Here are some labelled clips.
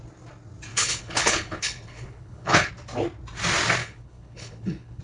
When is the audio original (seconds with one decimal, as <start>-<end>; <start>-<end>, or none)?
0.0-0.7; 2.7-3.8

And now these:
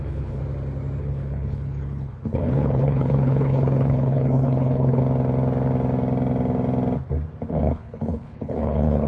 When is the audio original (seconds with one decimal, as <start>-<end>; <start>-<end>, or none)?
0.4-1.0; 5.0-7.5

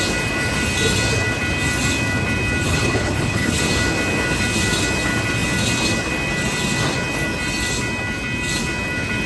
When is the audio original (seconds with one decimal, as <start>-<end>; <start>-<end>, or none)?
0.0-2.7; 3.6-9.3

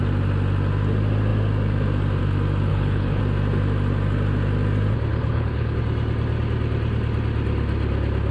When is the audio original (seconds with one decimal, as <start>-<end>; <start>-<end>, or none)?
0.0-2.7; 3.2-5.1; 5.8-8.3

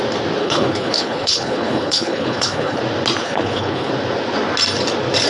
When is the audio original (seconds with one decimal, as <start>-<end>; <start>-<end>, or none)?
0.0-0.4; 2.8-3.2; 3.9-5.3

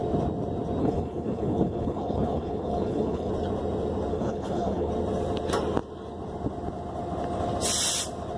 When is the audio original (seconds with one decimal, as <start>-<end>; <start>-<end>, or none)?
0.0-0.8; 3.3-4.1; 4.9-8.4